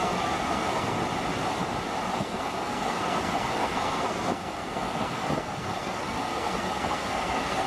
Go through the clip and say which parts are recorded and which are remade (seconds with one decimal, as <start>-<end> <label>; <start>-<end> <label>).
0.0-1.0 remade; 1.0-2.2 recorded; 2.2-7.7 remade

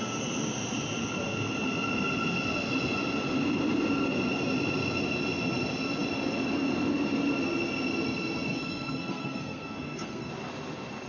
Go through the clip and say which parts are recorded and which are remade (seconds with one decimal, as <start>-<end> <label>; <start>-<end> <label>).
0.0-8.5 recorded; 8.5-10.3 remade; 10.3-11.1 recorded

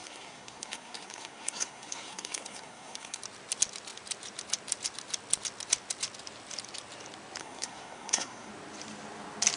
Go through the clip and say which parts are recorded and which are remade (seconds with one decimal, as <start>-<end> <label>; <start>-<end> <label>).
0.0-3.2 remade; 3.2-7.4 recorded; 7.4-8.5 remade; 8.5-9.6 recorded

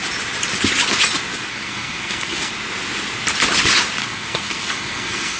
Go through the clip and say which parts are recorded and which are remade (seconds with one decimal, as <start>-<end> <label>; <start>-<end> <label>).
0.0-1.5 recorded; 1.5-2.5 remade; 2.5-4.0 recorded; 4.0-5.4 remade

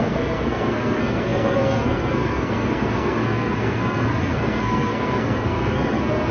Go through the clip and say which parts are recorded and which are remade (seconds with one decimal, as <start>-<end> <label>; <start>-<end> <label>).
0.0-6.3 remade

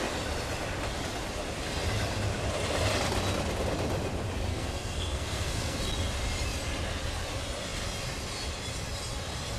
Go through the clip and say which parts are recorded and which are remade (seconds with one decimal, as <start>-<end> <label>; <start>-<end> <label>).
0.0-4.5 recorded; 4.5-5.8 remade; 5.8-9.6 recorded